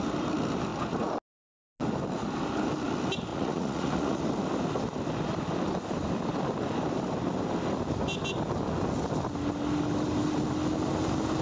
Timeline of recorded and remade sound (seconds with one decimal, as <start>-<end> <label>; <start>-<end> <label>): 0.0-3.3 recorded; 3.3-4.2 remade; 4.2-11.4 recorded